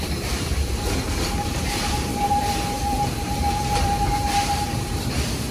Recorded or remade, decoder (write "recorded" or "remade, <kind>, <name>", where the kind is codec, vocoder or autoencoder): remade, vocoder, BigVGAN v2